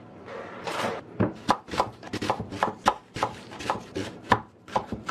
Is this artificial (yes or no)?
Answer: yes